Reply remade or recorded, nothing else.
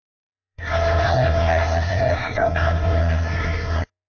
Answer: remade